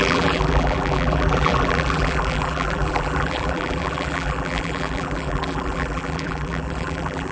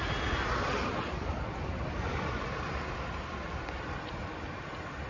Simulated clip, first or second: first